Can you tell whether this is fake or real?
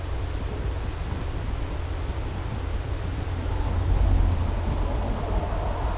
real